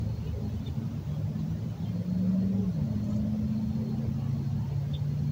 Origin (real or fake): real